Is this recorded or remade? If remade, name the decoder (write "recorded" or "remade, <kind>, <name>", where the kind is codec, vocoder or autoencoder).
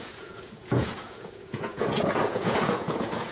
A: remade, vocoder, Vocos